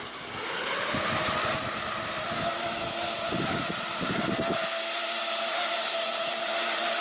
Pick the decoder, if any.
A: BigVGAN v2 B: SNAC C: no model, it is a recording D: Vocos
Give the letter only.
A